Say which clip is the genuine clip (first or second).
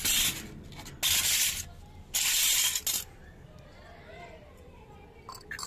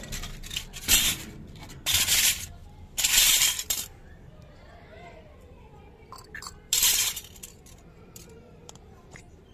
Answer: first